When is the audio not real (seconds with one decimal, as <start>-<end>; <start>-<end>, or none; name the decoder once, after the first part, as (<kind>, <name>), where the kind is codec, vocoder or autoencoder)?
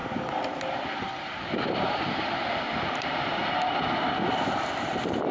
1.0-5.3 (vocoder, BigVGAN v2)